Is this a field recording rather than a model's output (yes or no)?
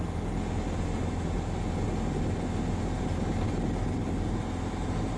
yes